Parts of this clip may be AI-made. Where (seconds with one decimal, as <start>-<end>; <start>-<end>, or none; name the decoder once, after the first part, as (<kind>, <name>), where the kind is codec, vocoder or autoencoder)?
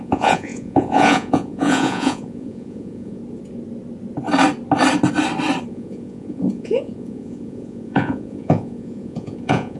0.0-3.2 (vocoder, Vocos); 5.7-9.8